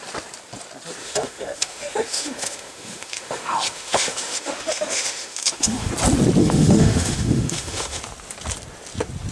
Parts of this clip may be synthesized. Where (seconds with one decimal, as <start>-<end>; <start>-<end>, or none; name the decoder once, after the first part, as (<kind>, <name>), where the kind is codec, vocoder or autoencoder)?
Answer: 1.0-5.9 (autoencoder, DAC-VAE); 6.4-8.0